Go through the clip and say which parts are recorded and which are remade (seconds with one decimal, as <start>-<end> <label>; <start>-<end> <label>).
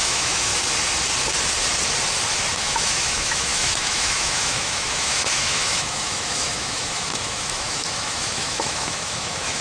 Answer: 0.0-0.5 remade; 0.5-2.5 recorded; 2.5-9.6 remade